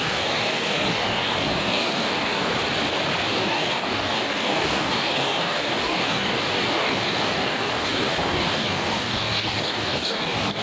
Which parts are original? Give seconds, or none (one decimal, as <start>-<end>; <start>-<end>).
2.5-3.3